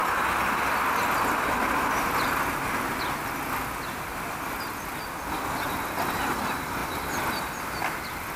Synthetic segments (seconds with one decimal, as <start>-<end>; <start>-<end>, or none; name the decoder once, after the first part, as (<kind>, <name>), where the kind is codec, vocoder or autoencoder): none